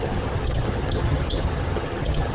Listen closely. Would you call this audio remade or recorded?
remade